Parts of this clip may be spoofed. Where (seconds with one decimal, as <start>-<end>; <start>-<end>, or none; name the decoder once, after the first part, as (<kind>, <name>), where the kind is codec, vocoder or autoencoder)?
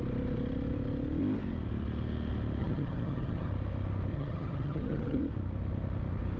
2.6-3.5 (vocoder, HiFi-GAN); 4.1-5.2